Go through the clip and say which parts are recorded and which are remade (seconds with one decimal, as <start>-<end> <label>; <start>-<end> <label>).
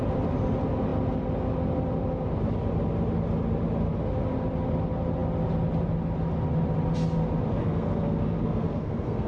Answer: 0.0-7.6 recorded; 7.6-9.3 remade